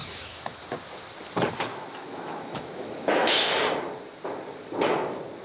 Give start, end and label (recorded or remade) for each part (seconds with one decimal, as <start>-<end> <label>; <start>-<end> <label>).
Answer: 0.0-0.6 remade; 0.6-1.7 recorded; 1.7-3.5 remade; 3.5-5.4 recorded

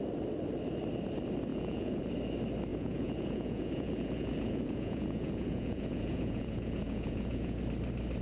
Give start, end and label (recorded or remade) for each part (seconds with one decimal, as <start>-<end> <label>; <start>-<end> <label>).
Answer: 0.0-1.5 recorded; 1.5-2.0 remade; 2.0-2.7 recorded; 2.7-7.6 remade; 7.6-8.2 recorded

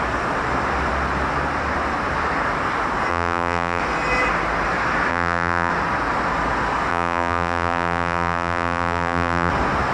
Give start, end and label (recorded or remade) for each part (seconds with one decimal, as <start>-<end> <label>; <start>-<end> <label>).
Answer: 0.0-3.1 recorded; 3.1-3.8 remade; 3.8-5.1 recorded; 5.1-5.7 remade; 5.7-6.9 recorded; 6.9-9.5 remade; 9.5-9.9 recorded

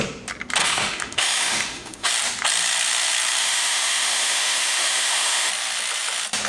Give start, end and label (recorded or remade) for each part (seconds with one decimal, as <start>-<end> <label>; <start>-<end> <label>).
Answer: 0.0-0.6 recorded; 0.6-2.1 remade; 2.1-3.4 recorded; 3.4-5.5 remade; 5.5-6.5 recorded